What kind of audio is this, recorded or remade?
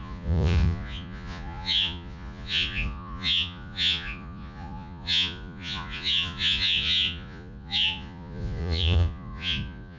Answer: remade